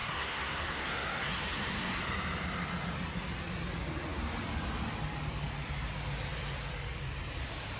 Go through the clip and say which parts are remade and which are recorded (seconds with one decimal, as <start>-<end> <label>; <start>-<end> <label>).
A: 0.0-2.0 remade; 2.0-7.8 recorded